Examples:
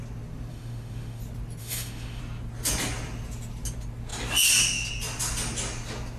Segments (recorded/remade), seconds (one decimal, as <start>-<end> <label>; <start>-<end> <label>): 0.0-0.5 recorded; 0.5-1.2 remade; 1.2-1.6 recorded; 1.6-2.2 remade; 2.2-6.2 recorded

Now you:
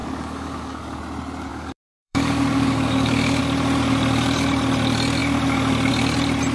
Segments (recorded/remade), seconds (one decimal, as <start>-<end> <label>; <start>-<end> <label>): 0.0-1.0 remade; 1.0-1.5 recorded; 1.5-3.4 remade; 3.4-6.5 recorded

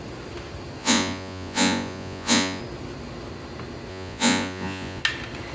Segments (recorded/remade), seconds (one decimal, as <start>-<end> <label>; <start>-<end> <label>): 0.0-0.8 recorded; 0.8-2.6 remade; 2.6-3.9 recorded; 3.9-5.0 remade; 5.0-5.5 recorded

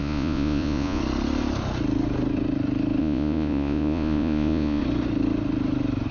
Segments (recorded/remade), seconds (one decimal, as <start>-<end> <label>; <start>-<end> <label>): 0.0-1.0 remade; 1.0-3.0 recorded; 3.0-4.8 remade; 4.8-6.1 recorded

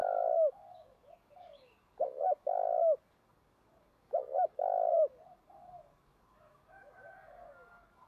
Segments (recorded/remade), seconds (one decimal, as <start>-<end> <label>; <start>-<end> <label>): 0.0-8.1 remade

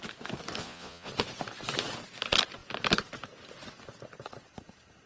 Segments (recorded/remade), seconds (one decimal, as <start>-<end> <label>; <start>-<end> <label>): 0.0-0.6 recorded; 0.6-1.1 remade; 1.1-5.1 recorded

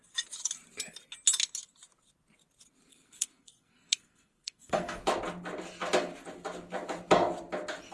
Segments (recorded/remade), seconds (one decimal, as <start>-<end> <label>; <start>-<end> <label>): 0.0-2.9 recorded; 2.9-5.0 remade; 5.0-7.9 recorded